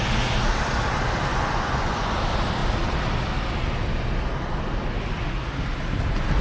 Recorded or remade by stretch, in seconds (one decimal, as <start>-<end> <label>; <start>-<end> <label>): 0.0-1.3 recorded; 1.3-2.1 remade; 2.1-6.4 recorded